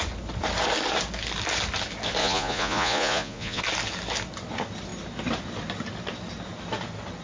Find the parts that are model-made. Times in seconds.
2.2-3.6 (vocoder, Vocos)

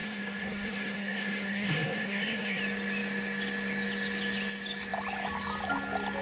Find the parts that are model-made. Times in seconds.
0.0-2.6 (codec, SNAC)

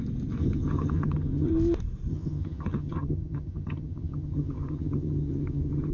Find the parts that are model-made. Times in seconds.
0.4-1.5 (vocoder, HiFi-GAN); 2.1-5.9

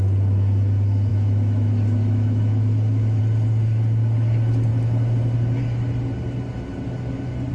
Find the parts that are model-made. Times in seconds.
1.1-3.2 (autoencoder, DAC-VAE)

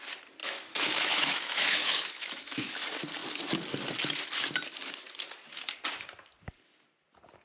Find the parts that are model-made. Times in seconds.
0.4-2.7 (autoencoder, DAC-VAE)

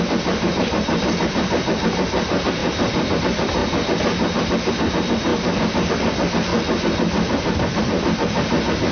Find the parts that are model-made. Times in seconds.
0.0-2.6 (vocoder, BigVGAN v2); 3.2-3.6; 4.7-5.3; 5.9-6.5; 7.8-8.9

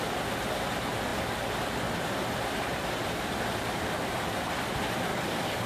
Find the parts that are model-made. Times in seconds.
5.1-5.7 (codec, DAC)

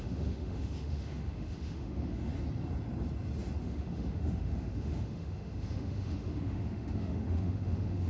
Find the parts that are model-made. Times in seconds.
0.0-2.3 (autoencoder, DAC-VAE); 3.6-8.1